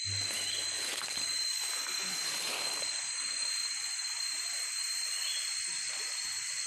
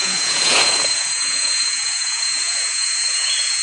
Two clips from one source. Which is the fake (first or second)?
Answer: second